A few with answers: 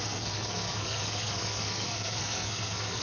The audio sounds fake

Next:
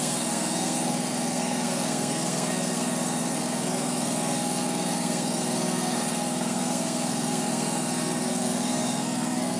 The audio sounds fake